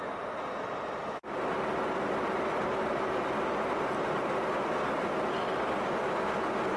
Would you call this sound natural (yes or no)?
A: yes